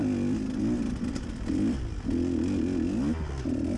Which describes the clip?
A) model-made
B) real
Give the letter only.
B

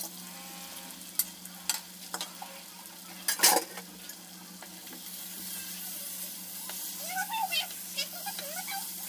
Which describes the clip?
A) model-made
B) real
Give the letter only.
B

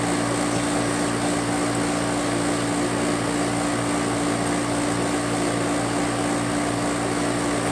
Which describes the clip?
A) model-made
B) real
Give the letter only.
B